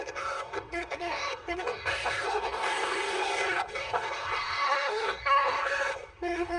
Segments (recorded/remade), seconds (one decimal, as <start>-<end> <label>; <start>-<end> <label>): 0.0-6.6 remade